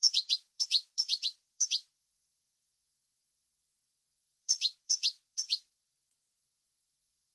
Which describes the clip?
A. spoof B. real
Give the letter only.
A